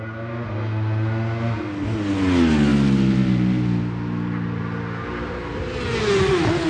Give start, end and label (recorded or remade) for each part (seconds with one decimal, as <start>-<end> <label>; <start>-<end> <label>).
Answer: 0.0-6.7 recorded